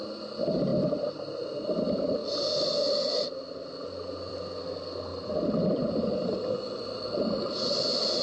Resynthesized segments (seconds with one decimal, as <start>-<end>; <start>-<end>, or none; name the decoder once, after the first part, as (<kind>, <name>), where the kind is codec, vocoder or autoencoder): none